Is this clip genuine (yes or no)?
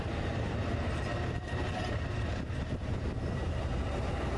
no